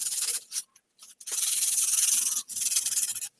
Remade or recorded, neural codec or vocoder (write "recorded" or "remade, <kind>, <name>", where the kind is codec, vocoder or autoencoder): remade, vocoder, Vocos